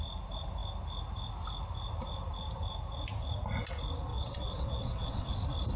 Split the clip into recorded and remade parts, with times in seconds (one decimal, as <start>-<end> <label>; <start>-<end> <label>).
0.0-4.1 recorded; 4.1-5.3 remade; 5.3-5.8 recorded